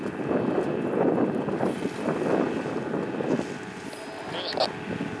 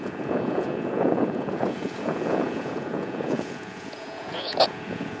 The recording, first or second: first